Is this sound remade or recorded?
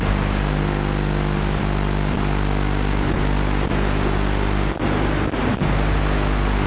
recorded